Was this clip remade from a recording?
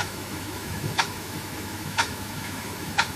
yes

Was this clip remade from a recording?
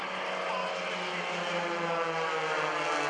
no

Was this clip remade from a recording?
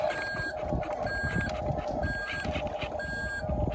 no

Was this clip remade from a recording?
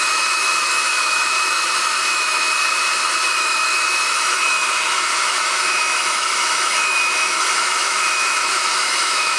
yes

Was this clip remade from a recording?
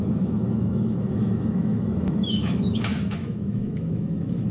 yes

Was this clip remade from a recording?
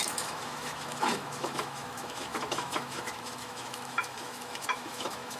yes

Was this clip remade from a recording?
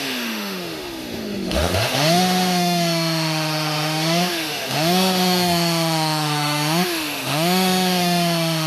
yes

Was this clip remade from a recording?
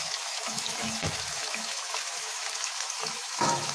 yes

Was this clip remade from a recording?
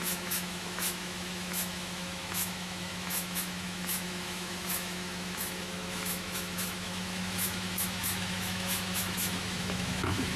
yes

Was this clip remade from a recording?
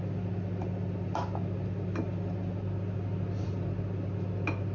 no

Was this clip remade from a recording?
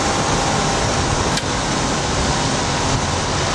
no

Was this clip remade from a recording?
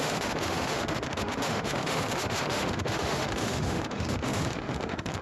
yes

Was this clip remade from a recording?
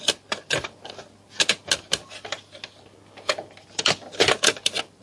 no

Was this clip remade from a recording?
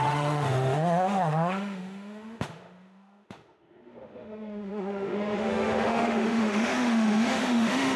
yes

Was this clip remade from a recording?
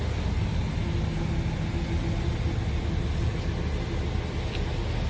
no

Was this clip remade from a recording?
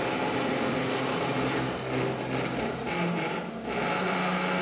no